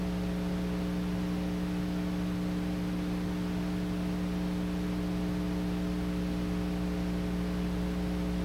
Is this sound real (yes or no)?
yes